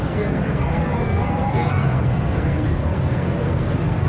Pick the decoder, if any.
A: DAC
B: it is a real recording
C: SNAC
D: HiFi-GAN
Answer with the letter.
C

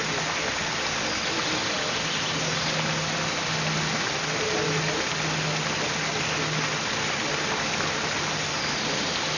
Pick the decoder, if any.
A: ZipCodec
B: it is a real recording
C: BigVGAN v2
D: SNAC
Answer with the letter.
B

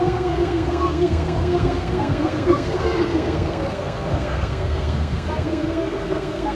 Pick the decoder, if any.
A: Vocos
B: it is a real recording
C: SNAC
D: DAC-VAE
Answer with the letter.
C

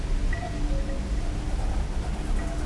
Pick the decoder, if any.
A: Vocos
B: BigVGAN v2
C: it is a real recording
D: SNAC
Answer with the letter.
C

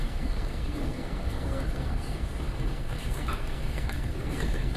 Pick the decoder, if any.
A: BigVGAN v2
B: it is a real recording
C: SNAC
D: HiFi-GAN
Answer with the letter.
C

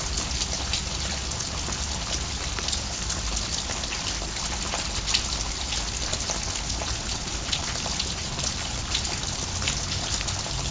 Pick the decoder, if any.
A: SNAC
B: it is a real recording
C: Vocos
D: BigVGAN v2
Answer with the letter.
B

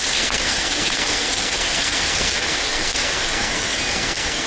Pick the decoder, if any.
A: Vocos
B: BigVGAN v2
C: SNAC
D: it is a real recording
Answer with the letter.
C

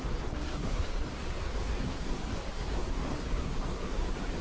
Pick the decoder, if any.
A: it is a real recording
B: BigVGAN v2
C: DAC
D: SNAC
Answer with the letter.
D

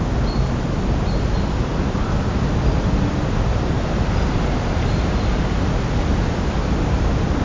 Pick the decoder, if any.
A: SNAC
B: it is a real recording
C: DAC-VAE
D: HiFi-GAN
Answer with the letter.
B